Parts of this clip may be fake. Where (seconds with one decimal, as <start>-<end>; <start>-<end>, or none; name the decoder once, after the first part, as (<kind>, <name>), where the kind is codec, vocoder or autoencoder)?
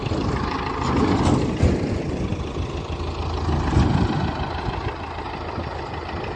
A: none